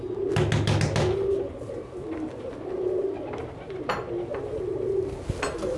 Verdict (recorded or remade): recorded